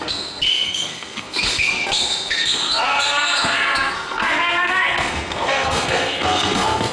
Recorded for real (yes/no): no